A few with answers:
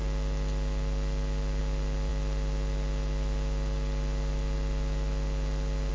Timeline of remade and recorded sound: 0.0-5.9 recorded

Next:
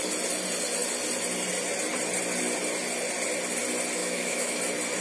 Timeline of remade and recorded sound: 0.0-4.0 recorded; 4.0-4.6 remade; 4.6-5.0 recorded

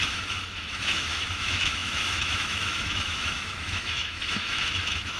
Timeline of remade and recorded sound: 0.0-5.2 remade

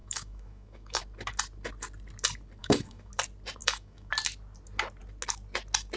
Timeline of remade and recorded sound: 0.0-1.0 remade; 1.0-2.6 recorded; 2.6-3.1 remade; 3.1-3.6 recorded; 3.6-4.1 remade; 4.1-6.0 recorded

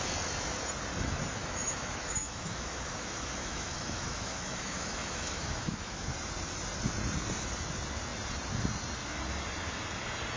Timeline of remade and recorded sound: 0.0-1.4 recorded; 1.4-6.0 remade; 6.0-10.4 recorded

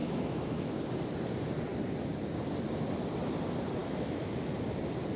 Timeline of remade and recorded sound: 0.0-0.7 remade; 0.7-3.8 recorded; 3.8-4.5 remade; 4.5-5.2 recorded